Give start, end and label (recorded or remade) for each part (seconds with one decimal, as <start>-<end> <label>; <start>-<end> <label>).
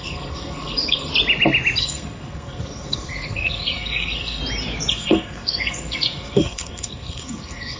0.0-1.1 remade; 1.1-1.8 recorded; 1.8-4.4 remade; 4.4-4.9 recorded; 4.9-7.8 remade